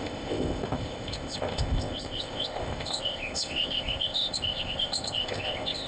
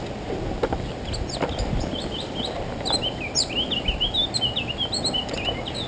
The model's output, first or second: first